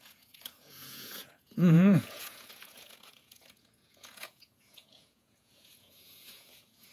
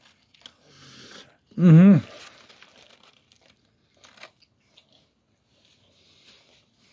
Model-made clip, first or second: first